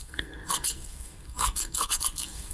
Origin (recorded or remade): remade